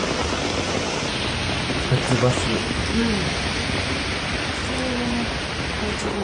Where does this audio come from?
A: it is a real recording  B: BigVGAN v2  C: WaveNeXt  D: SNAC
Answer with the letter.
A